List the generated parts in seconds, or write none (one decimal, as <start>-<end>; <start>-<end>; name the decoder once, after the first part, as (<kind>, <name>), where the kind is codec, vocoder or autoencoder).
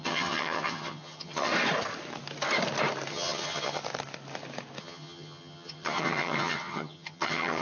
0.0-1.5 (vocoder, HiFi-GAN); 3.1-3.8; 4.8-7.6